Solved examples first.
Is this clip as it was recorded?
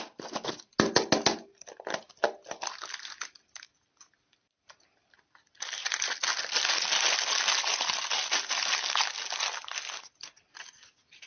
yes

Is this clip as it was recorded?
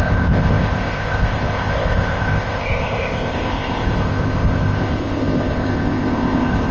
no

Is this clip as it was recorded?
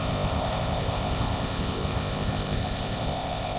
no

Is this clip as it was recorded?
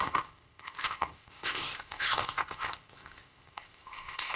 no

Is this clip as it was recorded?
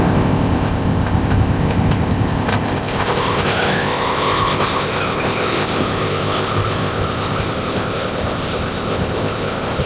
no